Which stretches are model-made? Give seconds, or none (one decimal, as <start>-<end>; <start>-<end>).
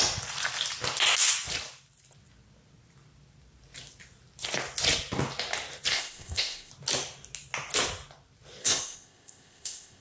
5.9-6.7; 8.6-10.0